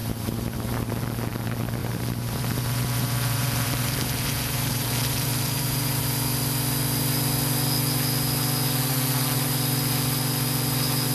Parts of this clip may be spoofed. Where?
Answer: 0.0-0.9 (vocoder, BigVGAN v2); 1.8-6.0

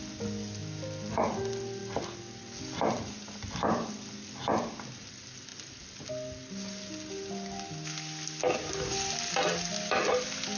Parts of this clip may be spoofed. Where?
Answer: none